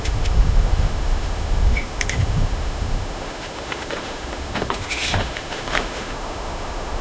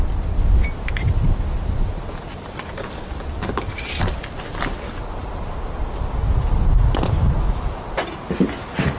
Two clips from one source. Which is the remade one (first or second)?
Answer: first